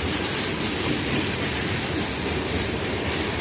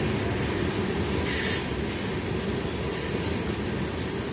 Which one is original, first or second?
second